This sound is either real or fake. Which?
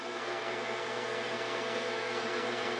fake